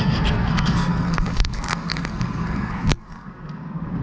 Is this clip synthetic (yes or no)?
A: yes